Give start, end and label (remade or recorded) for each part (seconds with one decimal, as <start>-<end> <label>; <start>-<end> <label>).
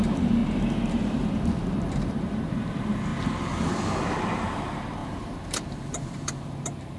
0.0-3.1 remade; 3.1-3.9 recorded; 3.9-7.0 remade